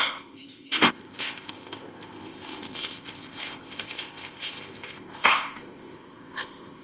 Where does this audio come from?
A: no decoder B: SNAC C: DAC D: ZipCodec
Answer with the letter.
D